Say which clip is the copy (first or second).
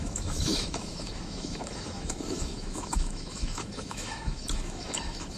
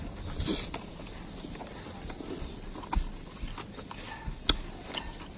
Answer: first